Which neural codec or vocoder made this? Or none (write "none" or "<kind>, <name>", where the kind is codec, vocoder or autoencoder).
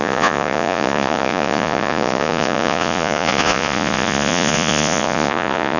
vocoder, Vocos